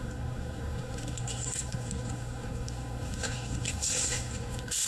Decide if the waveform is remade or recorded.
remade